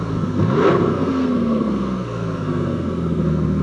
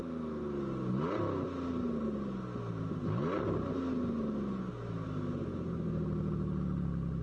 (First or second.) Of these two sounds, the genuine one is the second